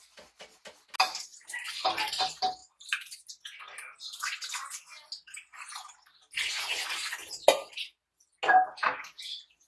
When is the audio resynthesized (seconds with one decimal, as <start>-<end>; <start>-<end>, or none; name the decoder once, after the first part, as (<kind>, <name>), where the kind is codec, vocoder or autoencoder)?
1.3-2.1 (vocoder, BigVGAN v2)